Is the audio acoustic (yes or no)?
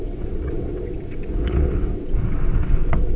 no